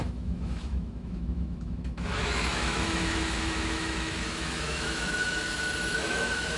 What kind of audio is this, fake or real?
fake